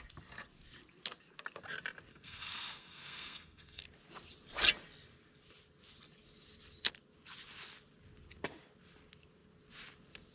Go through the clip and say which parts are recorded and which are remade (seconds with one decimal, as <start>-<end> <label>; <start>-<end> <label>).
0.0-2.1 recorded; 2.1-3.8 remade; 3.8-10.3 recorded